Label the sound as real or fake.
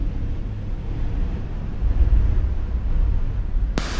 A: real